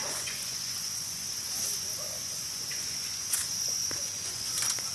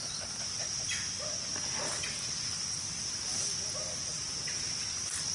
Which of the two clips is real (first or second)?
second